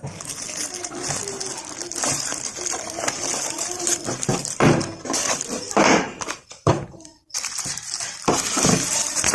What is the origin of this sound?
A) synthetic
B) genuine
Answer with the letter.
A